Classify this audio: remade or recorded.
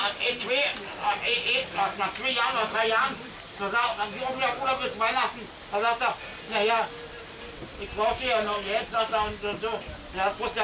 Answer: recorded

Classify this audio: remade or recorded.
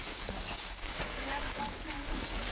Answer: remade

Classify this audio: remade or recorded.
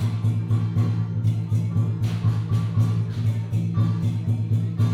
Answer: recorded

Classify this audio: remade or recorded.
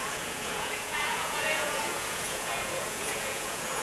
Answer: remade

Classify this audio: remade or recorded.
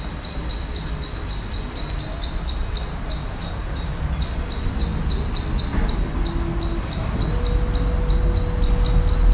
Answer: recorded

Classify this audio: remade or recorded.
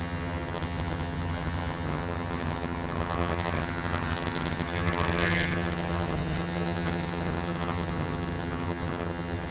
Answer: remade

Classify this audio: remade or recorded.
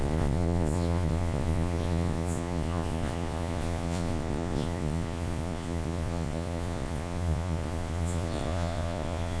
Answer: remade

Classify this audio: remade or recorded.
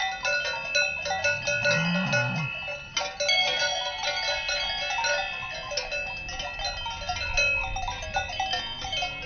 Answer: recorded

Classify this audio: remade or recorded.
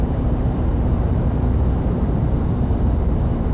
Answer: remade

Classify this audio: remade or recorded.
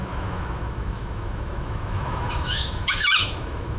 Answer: remade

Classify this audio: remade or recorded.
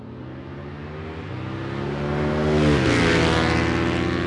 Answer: recorded